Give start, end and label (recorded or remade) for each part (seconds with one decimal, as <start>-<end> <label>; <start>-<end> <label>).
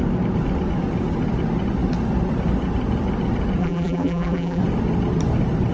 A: 0.0-3.6 recorded; 3.6-4.6 remade; 4.6-5.7 recorded